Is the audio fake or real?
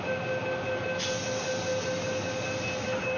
real